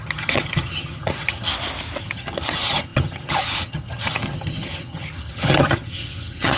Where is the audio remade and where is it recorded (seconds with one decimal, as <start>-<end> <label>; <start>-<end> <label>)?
0.0-1.5 remade; 1.5-2.0 recorded; 2.0-6.6 remade